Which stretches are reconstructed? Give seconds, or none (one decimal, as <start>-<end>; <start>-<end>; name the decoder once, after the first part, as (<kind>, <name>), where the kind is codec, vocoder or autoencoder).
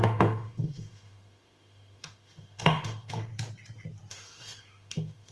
0.0-3.3 (autoencoder, DAC-VAE); 4.1-5.3